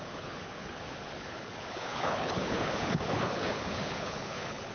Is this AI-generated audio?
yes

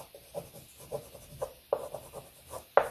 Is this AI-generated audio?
no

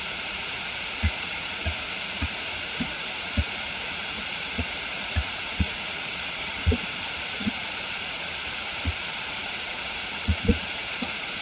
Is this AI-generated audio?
yes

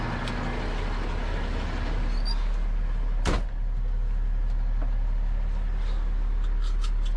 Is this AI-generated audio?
no